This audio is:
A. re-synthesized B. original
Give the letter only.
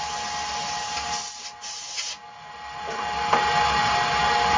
B